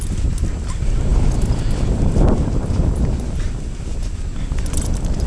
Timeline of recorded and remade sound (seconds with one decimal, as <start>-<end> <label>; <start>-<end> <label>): 0.0-5.3 recorded